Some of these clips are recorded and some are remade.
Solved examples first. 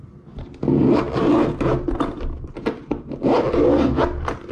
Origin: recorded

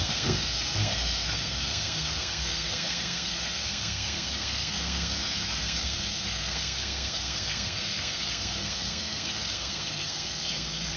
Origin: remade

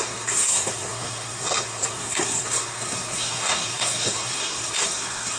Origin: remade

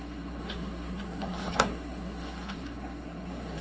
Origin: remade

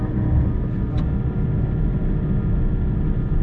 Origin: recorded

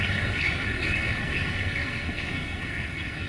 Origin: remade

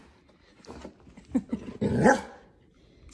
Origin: recorded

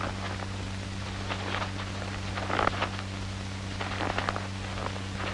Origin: recorded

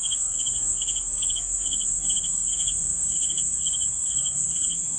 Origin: remade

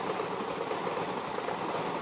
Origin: recorded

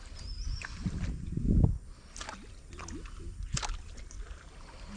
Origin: recorded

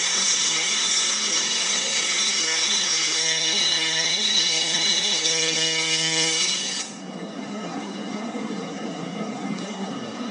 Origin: remade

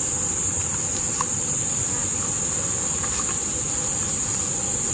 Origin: recorded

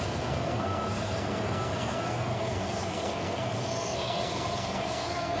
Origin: remade